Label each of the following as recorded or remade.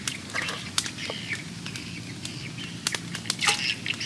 recorded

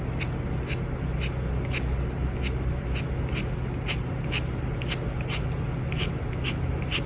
recorded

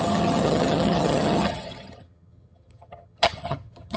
remade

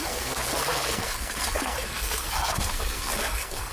remade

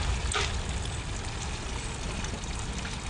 recorded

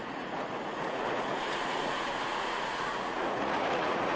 remade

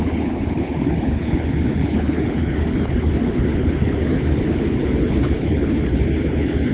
remade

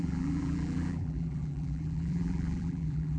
remade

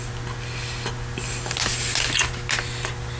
recorded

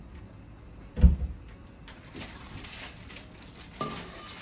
recorded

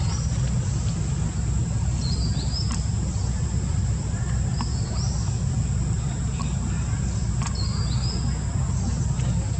recorded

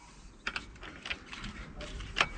recorded